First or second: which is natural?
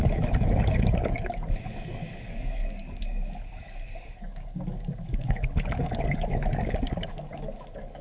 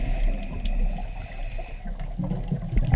second